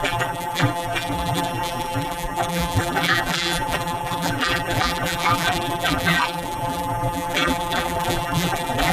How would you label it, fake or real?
fake